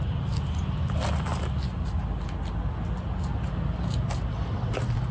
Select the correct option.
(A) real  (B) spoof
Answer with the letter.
A